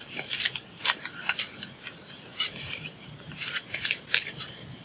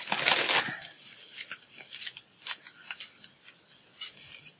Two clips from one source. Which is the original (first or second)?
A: second